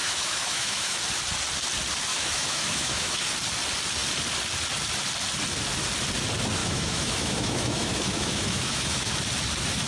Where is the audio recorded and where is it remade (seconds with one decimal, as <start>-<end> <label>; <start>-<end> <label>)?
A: 0.0-1.0 remade; 1.0-2.1 recorded; 2.1-3.3 remade; 3.3-6.6 recorded; 6.6-9.1 remade; 9.1-9.9 recorded

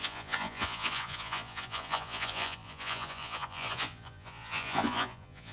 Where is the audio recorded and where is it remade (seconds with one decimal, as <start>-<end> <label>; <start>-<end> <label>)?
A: 0.0-5.5 remade

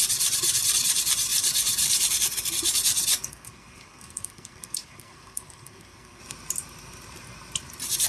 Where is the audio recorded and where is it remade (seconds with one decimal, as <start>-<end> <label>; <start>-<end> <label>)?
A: 0.0-3.3 recorded; 3.3-6.2 remade; 6.2-8.1 recorded

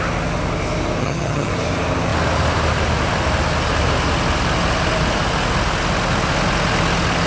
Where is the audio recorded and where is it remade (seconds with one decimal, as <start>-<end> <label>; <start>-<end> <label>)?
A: 0.0-1.0 recorded; 1.0-1.5 remade; 1.5-7.3 recorded

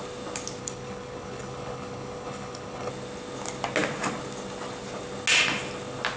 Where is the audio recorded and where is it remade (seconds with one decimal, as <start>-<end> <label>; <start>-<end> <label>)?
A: 0.0-0.6 recorded; 0.6-2.9 remade; 2.9-6.2 recorded

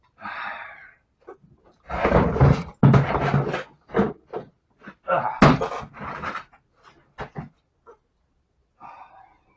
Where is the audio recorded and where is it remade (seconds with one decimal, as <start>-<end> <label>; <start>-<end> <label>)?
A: 0.0-9.6 recorded